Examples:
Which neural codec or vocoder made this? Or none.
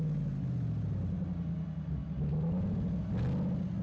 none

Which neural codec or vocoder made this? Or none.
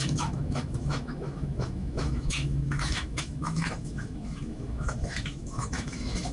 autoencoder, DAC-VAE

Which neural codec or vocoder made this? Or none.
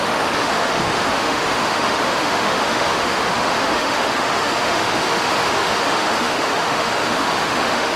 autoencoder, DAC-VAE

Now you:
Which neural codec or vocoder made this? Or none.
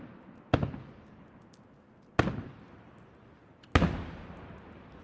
none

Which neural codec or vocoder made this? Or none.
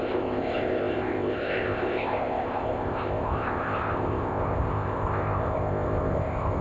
codec, ZipCodec